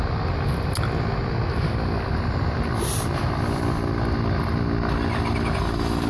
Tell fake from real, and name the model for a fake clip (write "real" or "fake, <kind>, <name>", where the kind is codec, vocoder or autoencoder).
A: real